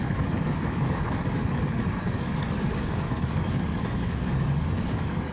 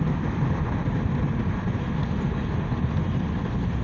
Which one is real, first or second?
second